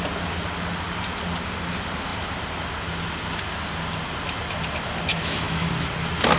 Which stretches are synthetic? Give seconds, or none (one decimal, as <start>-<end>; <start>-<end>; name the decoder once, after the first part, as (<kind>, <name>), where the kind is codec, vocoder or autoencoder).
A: 5.1-5.7 (autoencoder, DAC-VAE)